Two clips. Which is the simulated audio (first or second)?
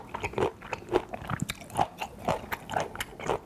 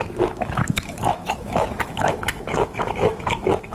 second